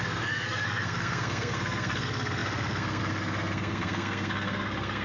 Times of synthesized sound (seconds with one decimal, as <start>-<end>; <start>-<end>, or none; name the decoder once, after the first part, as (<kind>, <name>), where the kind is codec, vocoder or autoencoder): 0.0-5.0 (codec, SNAC)